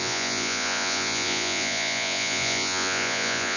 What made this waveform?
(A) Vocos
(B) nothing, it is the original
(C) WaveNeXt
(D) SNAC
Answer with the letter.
A